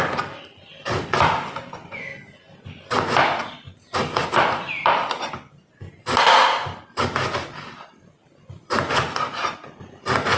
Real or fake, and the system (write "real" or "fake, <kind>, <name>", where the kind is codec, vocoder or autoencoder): real